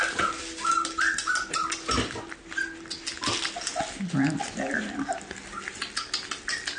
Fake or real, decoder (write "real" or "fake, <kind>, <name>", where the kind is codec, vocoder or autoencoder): real